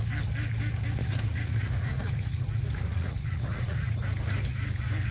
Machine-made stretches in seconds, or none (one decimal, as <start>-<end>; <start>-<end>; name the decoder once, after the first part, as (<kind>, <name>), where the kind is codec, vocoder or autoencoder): 1.0-4.0 (vocoder, Vocos)